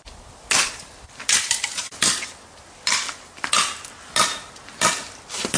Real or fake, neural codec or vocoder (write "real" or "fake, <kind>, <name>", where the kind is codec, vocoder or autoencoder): real